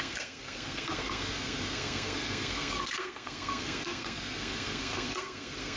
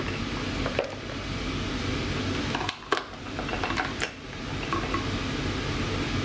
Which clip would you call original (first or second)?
second